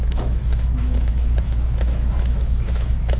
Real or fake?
fake